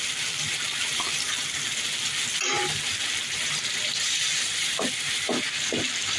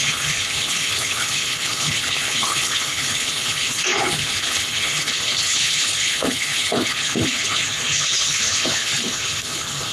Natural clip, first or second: first